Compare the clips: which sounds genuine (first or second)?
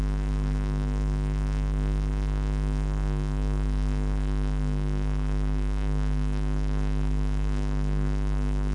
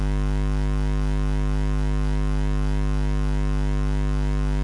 second